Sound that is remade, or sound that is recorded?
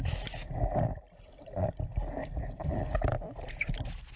recorded